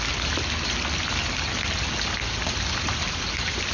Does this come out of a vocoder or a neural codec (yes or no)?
no